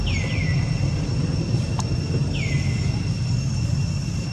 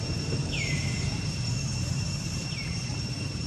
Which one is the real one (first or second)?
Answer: first